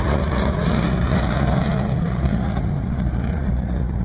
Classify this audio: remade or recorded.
remade